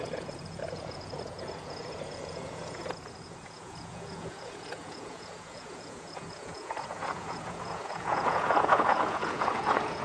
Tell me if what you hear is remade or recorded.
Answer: remade